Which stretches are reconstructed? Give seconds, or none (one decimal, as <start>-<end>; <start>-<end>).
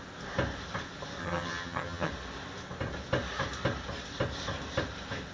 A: 1.2-2.1